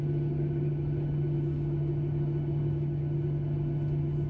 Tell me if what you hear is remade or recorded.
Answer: recorded